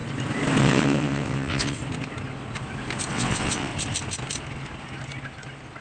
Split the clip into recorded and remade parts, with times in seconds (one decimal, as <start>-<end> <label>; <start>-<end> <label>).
0.0-0.6 recorded; 0.6-1.8 remade; 1.8-3.1 recorded; 3.1-3.7 remade; 3.7-5.8 recorded

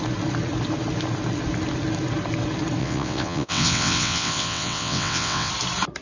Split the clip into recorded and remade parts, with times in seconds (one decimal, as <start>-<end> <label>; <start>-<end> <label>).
0.0-2.8 recorded; 2.8-5.5 remade; 5.5-6.0 recorded